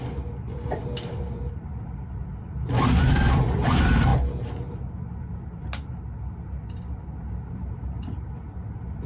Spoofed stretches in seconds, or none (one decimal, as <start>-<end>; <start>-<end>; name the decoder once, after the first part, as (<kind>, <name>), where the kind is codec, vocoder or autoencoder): 0.0-4.1 (vocoder, BigVGAN v2); 7.2-9.1